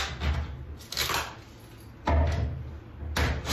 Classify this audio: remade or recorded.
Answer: recorded